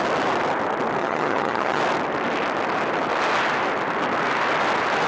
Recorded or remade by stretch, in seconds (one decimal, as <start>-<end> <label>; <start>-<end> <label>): 0.0-1.0 recorded; 1.0-1.8 remade; 1.8-5.1 recorded